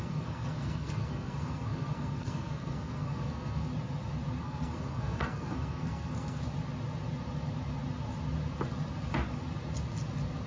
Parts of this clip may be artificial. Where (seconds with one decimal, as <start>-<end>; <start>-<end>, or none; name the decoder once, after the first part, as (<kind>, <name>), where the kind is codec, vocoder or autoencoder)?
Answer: 0.0-3.7 (codec, SNAC); 4.4-6.4